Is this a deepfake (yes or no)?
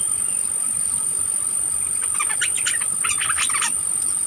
no